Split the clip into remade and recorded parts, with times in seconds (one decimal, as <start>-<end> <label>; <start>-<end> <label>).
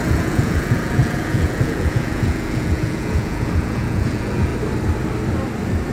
0.0-4.5 remade; 4.5-5.9 recorded